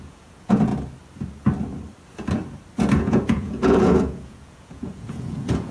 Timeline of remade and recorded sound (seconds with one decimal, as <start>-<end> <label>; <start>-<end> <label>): 0.0-0.7 remade; 0.7-3.0 recorded; 3.0-5.7 remade